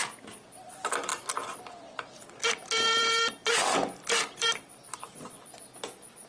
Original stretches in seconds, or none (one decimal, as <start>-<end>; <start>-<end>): 1.1-2.5